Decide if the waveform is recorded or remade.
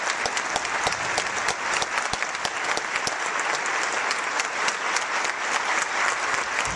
recorded